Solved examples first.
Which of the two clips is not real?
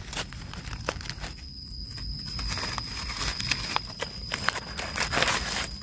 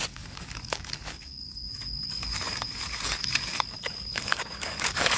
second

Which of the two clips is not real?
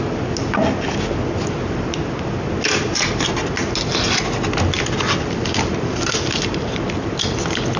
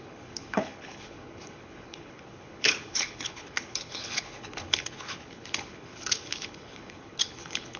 second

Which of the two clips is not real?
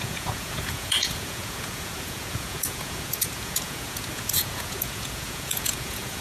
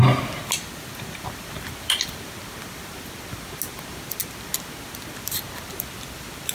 first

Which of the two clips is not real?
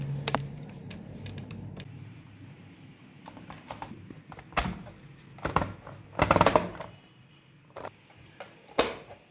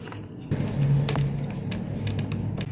first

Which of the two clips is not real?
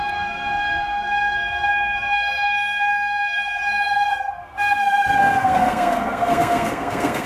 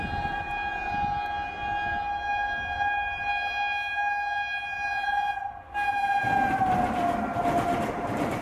first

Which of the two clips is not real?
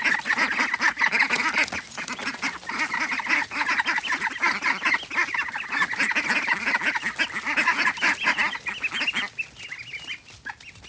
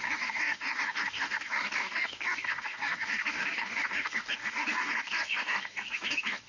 second